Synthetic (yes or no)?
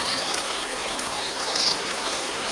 yes